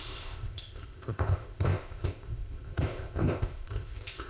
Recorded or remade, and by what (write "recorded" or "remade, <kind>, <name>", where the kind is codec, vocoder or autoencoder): remade, codec, ZipCodec